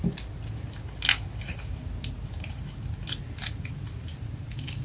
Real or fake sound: real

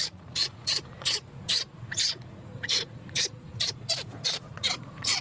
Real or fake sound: fake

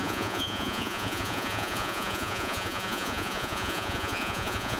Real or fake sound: fake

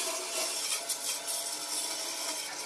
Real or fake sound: real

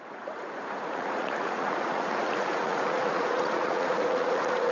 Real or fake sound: fake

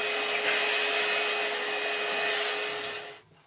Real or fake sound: real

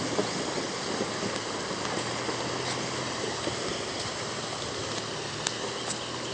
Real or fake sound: real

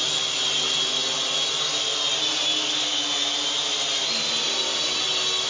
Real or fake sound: real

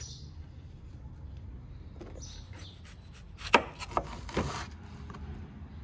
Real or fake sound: real